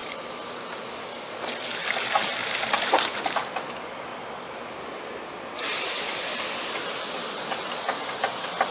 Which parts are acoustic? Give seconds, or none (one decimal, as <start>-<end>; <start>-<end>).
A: 1.0-7.2